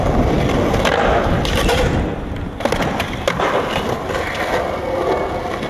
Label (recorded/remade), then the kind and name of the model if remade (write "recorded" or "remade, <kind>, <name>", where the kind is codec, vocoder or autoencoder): recorded